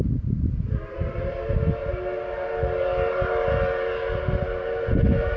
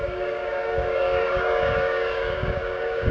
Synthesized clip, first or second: second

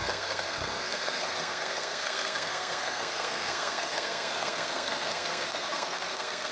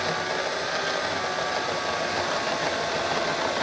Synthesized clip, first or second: first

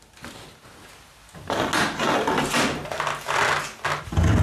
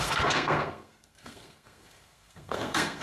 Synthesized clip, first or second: second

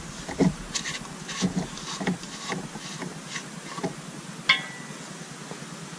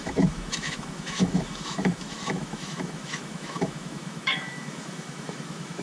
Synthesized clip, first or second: second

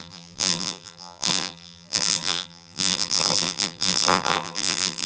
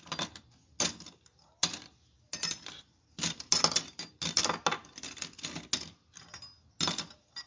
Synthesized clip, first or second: first